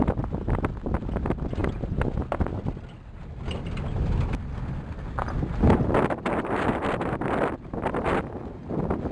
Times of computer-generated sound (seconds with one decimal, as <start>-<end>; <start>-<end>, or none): none